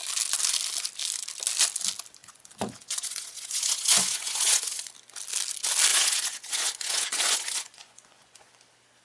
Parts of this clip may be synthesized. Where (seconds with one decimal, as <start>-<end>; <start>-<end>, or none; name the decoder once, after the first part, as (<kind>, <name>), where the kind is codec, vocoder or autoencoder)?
2.2-4.9 (vocoder, Vocos); 5.9-8.5